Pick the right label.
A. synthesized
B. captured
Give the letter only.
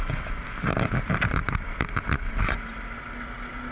B